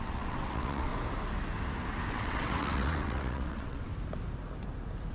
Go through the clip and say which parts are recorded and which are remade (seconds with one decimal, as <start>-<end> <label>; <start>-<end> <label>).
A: 0.0-0.9 remade; 0.9-2.1 recorded; 2.1-3.9 remade; 3.9-5.1 recorded